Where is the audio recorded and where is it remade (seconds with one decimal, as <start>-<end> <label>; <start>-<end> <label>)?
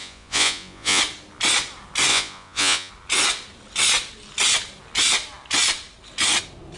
0.0-1.0 remade; 1.0-2.1 recorded; 2.1-2.9 remade; 2.9-6.8 recorded